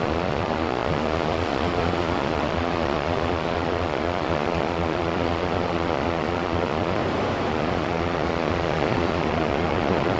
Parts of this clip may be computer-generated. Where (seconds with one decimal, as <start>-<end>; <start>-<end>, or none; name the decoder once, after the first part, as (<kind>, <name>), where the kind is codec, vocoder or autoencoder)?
0.0-7.0 (vocoder, Vocos); 7.5-10.2